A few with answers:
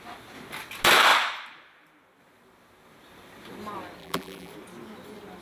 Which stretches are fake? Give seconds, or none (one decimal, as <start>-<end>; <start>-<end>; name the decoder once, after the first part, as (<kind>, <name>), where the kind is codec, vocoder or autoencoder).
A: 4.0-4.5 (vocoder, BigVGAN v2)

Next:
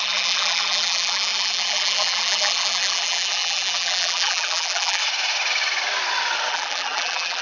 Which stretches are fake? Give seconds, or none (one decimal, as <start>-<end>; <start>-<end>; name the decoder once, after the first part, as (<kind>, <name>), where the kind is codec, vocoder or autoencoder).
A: 0.0-5.0 (vocoder, BigVGAN v2); 6.5-7.4

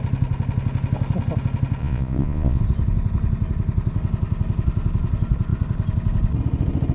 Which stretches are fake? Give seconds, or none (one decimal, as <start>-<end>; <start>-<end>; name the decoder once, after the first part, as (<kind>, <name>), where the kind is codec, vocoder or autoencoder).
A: 1.8-2.6 (vocoder, Vocos)

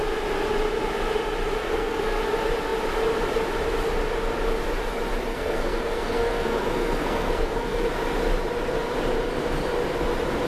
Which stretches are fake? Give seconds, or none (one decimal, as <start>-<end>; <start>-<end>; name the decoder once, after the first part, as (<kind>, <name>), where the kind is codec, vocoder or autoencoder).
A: 1.6-2.2 (codec, SNAC); 5.3-7.9